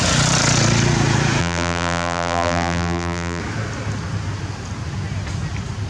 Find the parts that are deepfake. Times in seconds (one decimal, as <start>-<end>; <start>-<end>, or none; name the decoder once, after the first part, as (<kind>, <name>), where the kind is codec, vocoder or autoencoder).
1.4-3.4 (vocoder, BigVGAN v2)